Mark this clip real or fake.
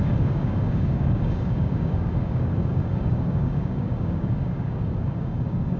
fake